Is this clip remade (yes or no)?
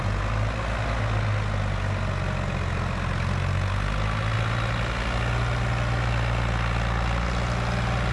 no